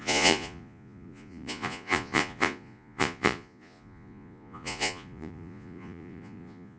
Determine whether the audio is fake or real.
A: fake